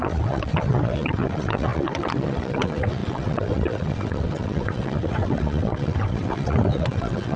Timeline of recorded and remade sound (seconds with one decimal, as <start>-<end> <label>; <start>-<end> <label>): 0.0-7.4 remade